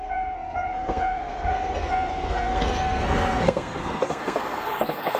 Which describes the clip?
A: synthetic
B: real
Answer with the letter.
A